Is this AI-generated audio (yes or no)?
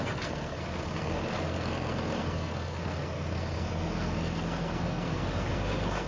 yes